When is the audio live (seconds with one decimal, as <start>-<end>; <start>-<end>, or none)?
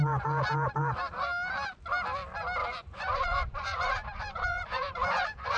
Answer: 0.0-2.6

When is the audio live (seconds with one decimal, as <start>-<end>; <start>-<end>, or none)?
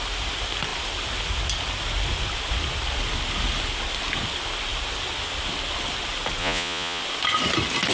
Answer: 0.0-6.4; 7.0-7.9